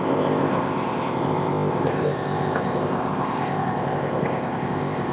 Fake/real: fake